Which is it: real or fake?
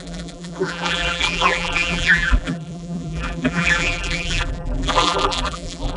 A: fake